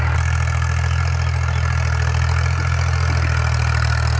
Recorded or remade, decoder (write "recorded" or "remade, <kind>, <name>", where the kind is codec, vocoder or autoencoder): recorded